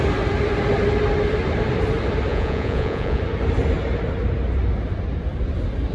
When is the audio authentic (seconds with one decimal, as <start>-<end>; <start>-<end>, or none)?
0.0-2.3; 3.2-5.9